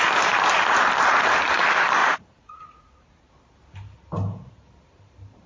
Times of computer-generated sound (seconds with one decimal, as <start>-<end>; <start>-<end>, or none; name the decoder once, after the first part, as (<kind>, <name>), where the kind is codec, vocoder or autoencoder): 2.0-3.3 (vocoder, Vocos)